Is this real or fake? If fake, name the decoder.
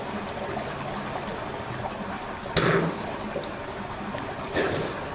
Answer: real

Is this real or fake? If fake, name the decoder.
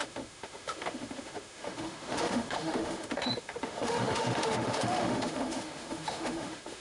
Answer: fake, autoencoder, DAC-VAE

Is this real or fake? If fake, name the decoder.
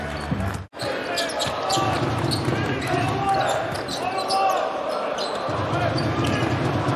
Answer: real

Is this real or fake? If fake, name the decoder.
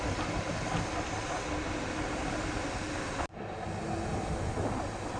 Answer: real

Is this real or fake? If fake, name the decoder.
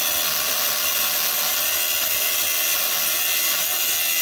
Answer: real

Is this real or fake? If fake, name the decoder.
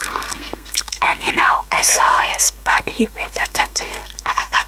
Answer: fake, codec, SNAC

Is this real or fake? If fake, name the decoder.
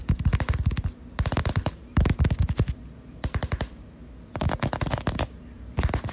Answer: real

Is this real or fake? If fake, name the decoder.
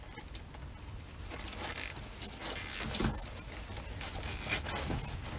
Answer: real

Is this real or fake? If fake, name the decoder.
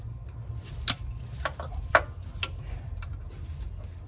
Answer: real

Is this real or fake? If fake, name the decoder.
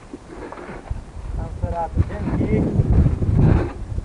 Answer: fake, vocoder, BigVGAN v2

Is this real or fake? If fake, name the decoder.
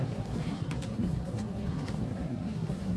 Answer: fake, codec, SNAC